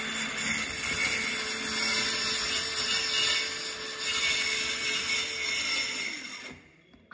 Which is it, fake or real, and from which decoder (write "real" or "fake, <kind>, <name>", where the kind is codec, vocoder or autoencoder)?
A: real